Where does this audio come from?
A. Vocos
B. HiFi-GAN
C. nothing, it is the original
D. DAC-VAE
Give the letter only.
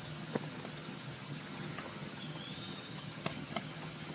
B